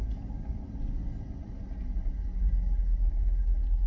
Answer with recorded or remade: recorded